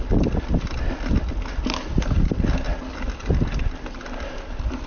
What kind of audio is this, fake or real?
real